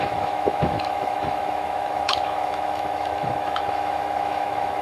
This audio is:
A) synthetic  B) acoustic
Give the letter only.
A